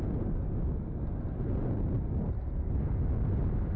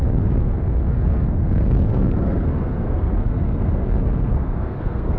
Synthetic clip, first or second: second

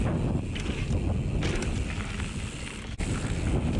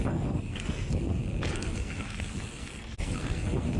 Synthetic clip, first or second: second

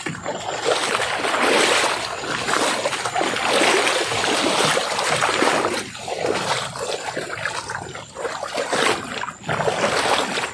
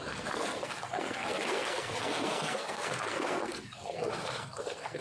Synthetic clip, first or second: second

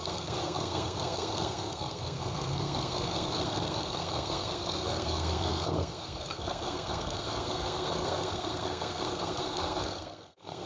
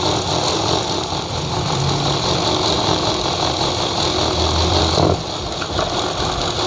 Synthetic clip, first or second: first